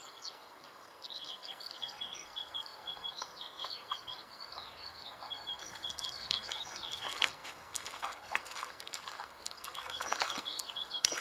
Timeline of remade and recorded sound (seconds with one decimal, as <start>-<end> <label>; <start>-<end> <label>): 0.0-11.2 remade